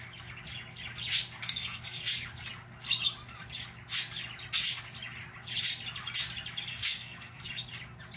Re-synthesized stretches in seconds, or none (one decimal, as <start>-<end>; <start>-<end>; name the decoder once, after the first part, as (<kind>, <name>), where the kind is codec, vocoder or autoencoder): 1.4-2.0 (codec, SNAC); 6.7-7.5